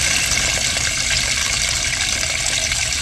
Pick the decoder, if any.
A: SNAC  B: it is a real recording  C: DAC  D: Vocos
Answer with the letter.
B